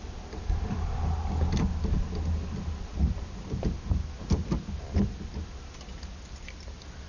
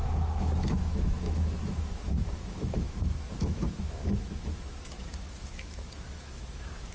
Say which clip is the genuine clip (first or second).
first